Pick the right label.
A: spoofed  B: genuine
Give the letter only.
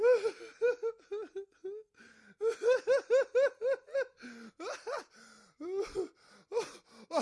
B